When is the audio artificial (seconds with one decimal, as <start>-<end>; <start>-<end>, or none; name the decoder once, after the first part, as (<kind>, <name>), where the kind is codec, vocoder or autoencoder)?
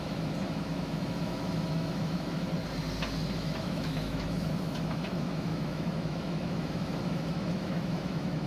0.0-2.5 (autoencoder, DAC-VAE); 3.3-8.5